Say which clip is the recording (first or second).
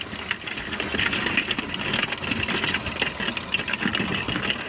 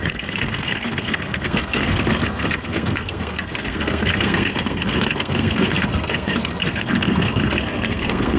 first